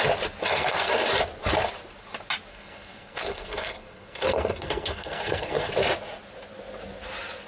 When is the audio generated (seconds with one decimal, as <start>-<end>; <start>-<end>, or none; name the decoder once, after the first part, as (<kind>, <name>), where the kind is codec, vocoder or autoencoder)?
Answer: 0.4-0.9 (codec, SNAC); 2.5-5.7